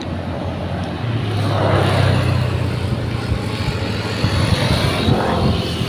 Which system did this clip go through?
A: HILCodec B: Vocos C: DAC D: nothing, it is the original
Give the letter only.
D